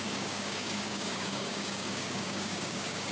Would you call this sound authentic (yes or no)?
no